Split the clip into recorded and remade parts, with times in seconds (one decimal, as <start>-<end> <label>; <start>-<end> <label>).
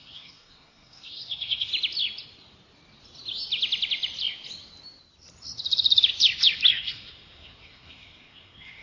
0.0-1.7 remade; 1.7-6.7 recorded; 6.7-8.8 remade